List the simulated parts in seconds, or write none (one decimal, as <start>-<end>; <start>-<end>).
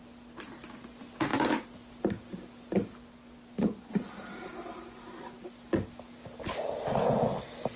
none